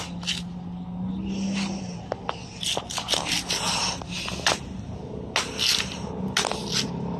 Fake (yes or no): no